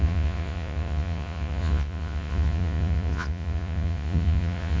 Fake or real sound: fake